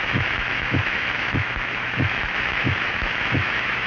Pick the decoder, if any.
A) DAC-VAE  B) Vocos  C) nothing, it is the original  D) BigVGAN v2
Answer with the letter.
A